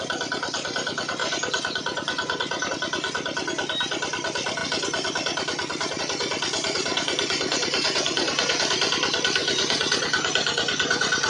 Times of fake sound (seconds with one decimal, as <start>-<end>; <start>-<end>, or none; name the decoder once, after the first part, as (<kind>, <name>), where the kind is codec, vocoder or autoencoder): 1.2-2.7 (vocoder, Vocos); 6.9-8.6; 9.4-11.3

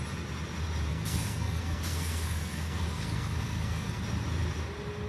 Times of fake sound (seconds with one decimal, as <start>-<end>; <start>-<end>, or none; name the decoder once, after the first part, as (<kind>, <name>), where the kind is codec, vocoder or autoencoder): 0.9-4.0 (codec, SNAC)